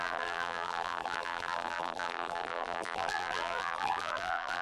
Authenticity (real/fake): fake